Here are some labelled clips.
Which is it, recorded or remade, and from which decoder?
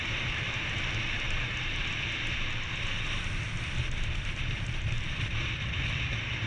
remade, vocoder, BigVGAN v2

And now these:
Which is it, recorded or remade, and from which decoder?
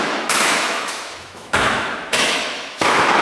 remade, autoencoder, DAC-VAE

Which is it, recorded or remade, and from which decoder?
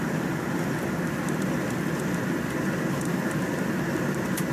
recorded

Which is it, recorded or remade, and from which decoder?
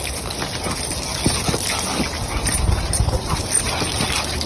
recorded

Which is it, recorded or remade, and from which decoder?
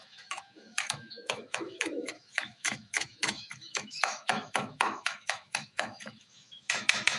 remade, autoencoder, DAC-VAE